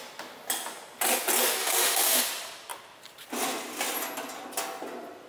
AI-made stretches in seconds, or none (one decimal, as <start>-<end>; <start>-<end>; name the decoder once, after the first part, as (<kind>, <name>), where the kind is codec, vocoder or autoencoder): 1.6-2.2 (autoencoder, DAC-VAE)